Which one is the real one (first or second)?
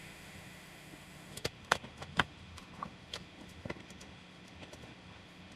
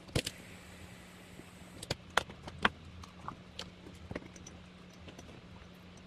second